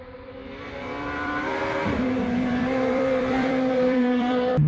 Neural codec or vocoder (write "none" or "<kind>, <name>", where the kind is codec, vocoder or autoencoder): vocoder, BigVGAN v2